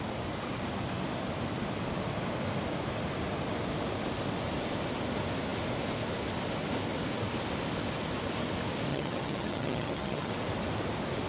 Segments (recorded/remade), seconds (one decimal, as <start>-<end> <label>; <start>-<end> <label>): 0.0-8.9 recorded; 8.9-10.3 remade; 10.3-11.3 recorded